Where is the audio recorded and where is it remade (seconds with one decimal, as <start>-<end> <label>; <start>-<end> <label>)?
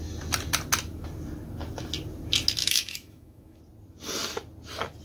0.0-2.6 recorded; 2.6-3.6 remade; 3.6-5.0 recorded